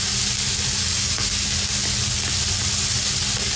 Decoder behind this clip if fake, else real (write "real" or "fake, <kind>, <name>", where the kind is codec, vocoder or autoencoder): real